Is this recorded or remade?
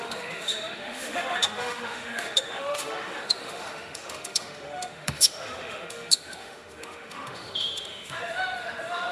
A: remade